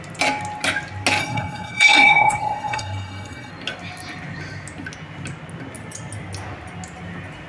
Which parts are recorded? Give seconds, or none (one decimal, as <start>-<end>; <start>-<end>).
0.0-1.2; 3.5-7.5